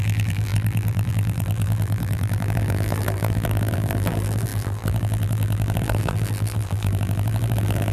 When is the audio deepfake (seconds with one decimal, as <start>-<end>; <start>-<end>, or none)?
0.0-7.9